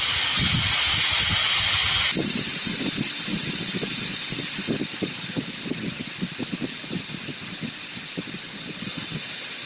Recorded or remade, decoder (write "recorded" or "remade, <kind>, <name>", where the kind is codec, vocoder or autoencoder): recorded